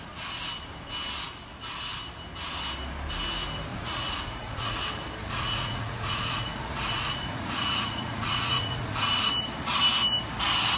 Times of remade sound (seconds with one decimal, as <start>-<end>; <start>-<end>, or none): 3.7-4.8; 5.2-9.3